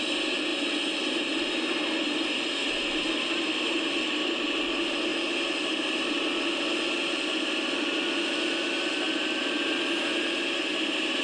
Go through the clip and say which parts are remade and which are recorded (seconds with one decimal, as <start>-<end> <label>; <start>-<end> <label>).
0.0-11.2 recorded

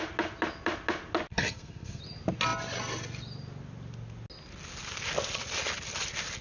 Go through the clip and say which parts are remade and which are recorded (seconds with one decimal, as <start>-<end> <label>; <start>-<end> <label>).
0.0-1.3 recorded; 1.3-2.0 remade; 2.0-6.4 recorded